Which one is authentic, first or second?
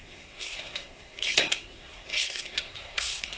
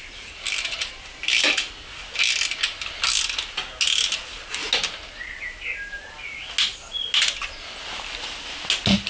second